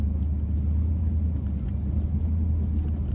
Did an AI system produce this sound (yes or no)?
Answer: no